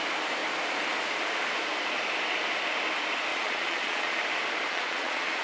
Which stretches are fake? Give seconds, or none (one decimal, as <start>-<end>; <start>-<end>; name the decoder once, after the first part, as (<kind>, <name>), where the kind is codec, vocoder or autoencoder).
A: 3.3-4.2 (vocoder, Vocos); 4.7-5.4